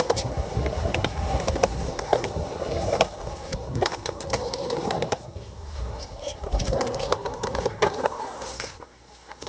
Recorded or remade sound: remade